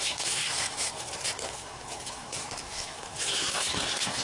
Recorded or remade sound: remade